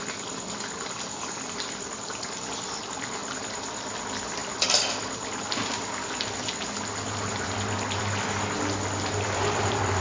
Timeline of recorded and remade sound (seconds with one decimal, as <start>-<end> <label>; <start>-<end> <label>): 0.0-10.0 recorded